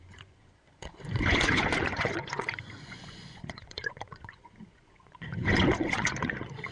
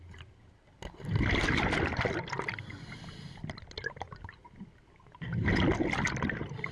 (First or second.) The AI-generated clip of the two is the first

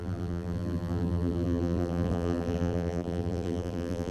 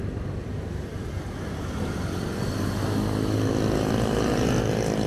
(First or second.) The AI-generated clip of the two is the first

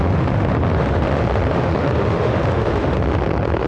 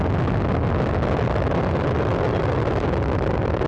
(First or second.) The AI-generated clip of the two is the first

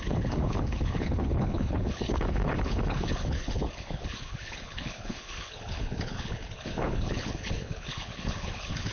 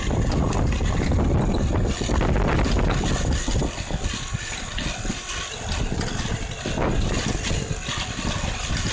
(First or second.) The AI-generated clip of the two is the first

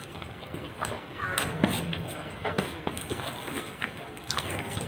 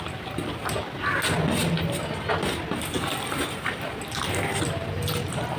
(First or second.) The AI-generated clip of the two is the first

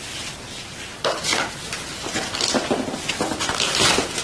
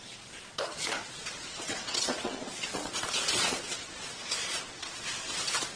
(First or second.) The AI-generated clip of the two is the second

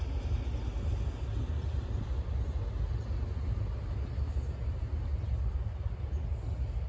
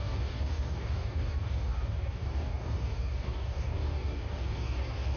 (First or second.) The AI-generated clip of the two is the second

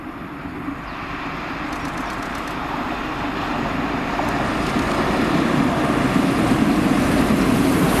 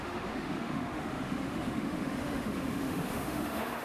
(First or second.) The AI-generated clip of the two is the second